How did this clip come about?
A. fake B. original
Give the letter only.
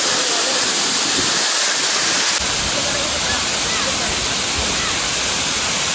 B